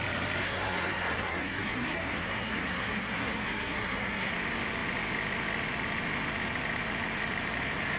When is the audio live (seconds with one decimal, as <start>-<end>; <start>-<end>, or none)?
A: 0.0-0.4; 4.3-8.0